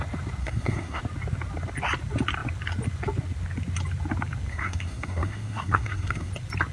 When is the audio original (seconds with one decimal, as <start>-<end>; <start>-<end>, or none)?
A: 0.0-0.4; 1.0-4.5; 6.3-6.7